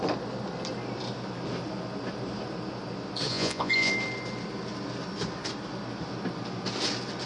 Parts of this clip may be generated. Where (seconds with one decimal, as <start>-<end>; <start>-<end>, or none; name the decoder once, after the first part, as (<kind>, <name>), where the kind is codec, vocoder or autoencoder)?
3.3-3.9 (vocoder, Vocos)